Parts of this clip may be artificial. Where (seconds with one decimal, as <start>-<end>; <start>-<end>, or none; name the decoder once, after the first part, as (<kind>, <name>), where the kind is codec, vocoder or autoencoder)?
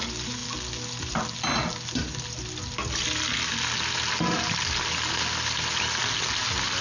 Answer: none